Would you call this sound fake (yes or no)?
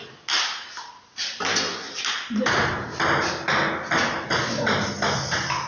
no